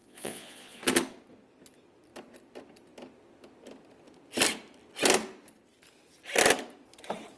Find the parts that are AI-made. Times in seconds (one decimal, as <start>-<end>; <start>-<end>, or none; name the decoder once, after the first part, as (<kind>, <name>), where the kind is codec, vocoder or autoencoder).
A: 0.0-0.8 (vocoder, Vocos)